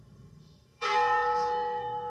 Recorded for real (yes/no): no